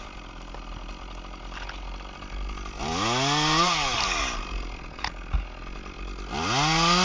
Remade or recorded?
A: recorded